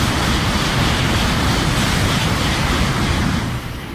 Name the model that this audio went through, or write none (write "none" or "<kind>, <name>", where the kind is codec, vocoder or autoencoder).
vocoder, BigVGAN v2